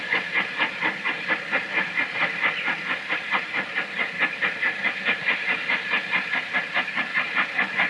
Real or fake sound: real